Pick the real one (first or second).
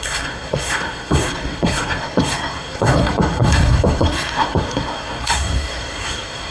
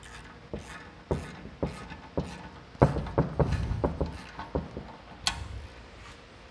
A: second